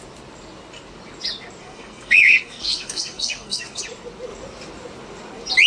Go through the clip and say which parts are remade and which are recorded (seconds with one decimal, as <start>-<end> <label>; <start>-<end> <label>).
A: 0.0-1.6 recorded; 1.6-3.8 remade; 3.8-5.7 recorded